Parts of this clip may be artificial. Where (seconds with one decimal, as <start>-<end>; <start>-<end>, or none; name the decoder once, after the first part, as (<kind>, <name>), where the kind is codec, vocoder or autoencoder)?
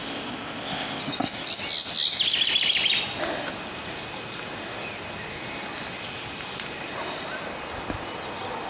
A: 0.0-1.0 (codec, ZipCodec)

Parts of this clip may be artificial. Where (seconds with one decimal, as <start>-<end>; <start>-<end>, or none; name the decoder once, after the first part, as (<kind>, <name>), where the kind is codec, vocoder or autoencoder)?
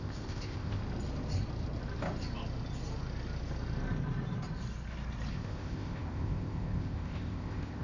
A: 0.0-0.8 (codec, ZipCodec); 5.3-7.8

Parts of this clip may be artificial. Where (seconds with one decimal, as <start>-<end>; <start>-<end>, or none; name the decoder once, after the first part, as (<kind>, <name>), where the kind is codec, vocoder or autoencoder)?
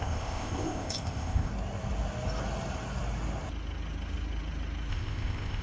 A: 0.0-1.5 (codec, ZipCodec); 4.9-5.6